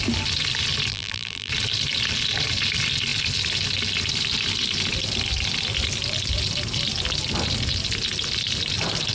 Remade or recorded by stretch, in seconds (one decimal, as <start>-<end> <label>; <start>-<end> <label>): 0.0-0.9 recorded; 0.9-1.5 remade; 1.5-9.1 recorded